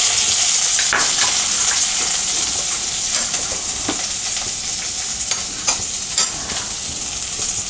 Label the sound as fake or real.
real